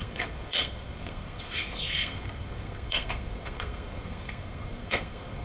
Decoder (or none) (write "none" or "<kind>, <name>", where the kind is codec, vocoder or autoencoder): codec, SNAC